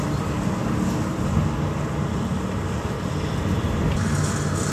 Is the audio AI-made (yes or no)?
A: no